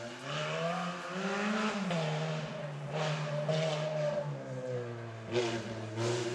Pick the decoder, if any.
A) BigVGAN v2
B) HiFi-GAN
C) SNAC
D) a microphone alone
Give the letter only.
D